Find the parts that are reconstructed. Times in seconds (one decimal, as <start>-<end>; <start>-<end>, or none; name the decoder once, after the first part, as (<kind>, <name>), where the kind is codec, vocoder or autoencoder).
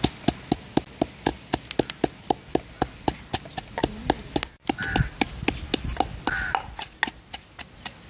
none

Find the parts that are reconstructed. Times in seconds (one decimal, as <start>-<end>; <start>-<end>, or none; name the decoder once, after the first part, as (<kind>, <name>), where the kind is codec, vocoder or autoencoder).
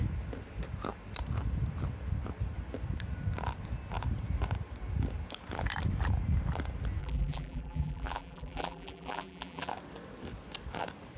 7.0-9.7 (vocoder, BigVGAN v2)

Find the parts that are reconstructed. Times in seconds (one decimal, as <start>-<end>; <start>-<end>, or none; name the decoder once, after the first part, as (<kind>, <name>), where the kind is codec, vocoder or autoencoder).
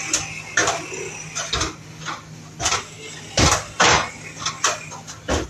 none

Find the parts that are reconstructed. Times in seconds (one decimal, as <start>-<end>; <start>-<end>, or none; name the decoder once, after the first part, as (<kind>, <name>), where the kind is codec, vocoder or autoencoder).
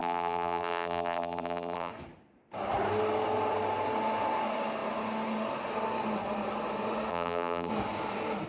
0.0-1.9 (vocoder, BigVGAN v2); 7.1-7.7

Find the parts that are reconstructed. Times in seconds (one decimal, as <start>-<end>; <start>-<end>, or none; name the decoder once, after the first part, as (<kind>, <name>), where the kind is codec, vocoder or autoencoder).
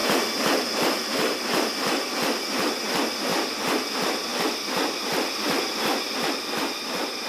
0.0-1.7 (vocoder, BigVGAN v2)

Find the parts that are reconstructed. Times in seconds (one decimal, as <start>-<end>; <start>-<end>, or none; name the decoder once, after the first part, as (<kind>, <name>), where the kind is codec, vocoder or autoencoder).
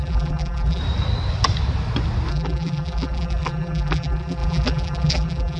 0.0-0.8 (vocoder, BigVGAN v2); 2.3-5.6